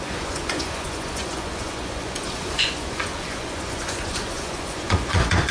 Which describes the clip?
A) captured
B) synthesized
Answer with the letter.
B